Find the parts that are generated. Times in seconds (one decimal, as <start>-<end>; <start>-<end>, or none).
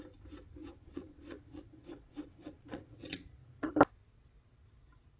0.6-3.7